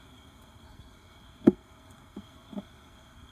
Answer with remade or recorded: remade